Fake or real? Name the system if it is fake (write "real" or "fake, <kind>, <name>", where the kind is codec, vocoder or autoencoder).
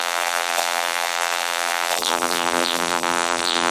fake, vocoder, BigVGAN v2